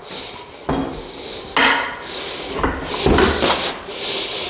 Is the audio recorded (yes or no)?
yes